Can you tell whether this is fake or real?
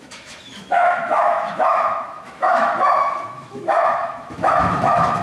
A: fake